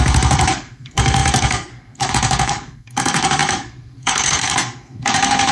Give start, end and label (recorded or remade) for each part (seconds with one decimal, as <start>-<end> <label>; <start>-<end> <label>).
0.0-5.5 remade